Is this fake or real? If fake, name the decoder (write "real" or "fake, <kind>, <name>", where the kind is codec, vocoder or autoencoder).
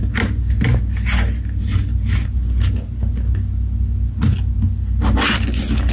real